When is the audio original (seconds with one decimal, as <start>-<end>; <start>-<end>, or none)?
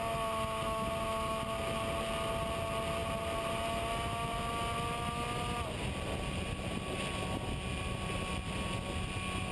0.0-9.5